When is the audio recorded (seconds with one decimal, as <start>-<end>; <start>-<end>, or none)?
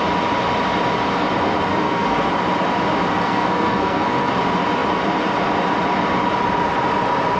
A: 0.0-1.7; 2.3-3.1; 4.3-7.4